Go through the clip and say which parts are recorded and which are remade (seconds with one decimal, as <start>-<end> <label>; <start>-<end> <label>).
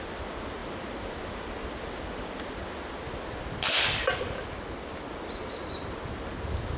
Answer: 0.0-6.8 recorded